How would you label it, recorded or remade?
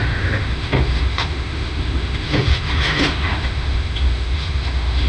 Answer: remade